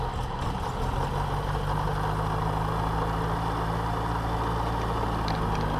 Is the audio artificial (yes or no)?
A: no